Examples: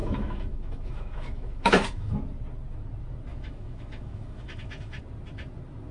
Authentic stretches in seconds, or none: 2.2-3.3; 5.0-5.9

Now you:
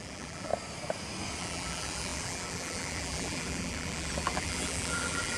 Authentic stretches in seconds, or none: 0.5-1.4

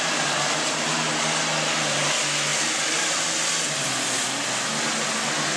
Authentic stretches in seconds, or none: 0.0-5.6

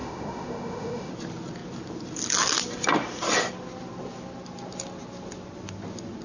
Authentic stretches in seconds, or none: 1.1-6.2

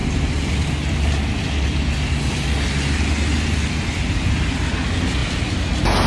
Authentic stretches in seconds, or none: 0.0-6.1

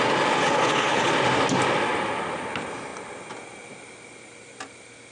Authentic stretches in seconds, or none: 0.0-0.4; 1.1-5.1